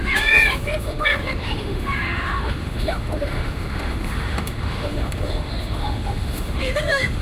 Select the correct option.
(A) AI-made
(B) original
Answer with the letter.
A